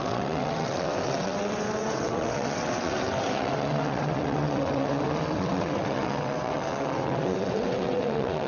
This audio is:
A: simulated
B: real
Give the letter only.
A